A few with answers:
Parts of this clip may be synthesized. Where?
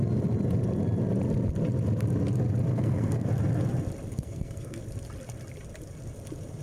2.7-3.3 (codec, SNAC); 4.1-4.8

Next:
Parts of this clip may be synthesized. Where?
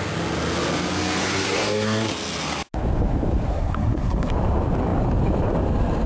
1.2-2.1 (codec, SNAC); 3.5-4.3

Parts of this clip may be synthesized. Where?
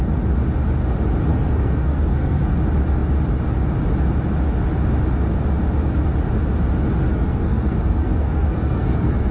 1.3-2.4 (codec, SNAC); 7.1-9.3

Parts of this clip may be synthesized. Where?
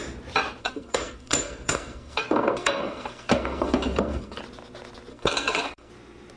0.6-4.4 (codec, SNAC); 5.1-5.9